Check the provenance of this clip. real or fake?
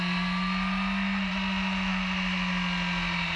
real